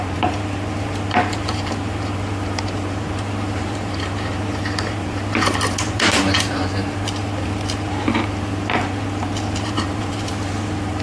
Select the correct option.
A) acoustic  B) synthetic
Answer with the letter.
B